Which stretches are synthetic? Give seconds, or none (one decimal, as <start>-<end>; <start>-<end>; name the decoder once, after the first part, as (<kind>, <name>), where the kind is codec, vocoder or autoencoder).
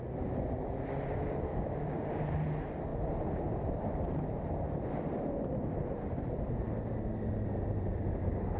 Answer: 1.5-2.1 (codec, DAC)